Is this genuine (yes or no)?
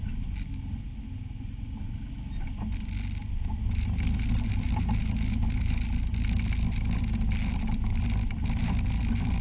yes